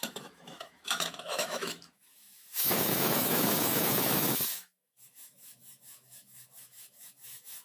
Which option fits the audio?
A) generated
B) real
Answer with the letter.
A